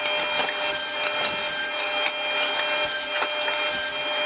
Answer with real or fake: real